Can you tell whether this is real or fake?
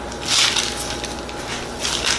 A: real